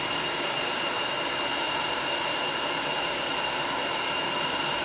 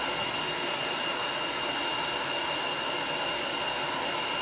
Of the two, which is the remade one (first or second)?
first